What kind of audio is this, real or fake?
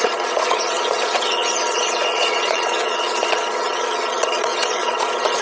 fake